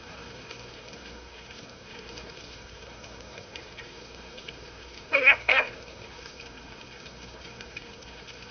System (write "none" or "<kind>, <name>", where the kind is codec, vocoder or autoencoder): codec, SNAC